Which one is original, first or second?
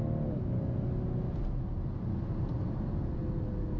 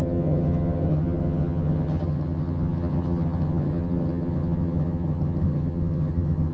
first